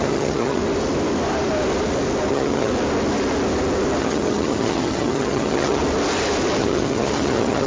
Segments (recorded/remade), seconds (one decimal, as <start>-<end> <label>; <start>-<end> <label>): 0.0-0.6 remade; 0.6-2.3 recorded; 2.3-2.7 remade; 2.7-4.0 recorded; 4.0-5.8 remade; 5.8-6.6 recorded; 6.6-7.7 remade